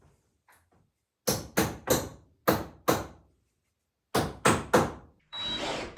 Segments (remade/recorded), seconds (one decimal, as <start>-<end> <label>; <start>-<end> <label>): 0.0-6.0 recorded